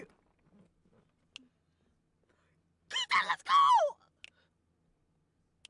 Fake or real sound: real